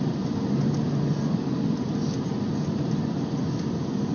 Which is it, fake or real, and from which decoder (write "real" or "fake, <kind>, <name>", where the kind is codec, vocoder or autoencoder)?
real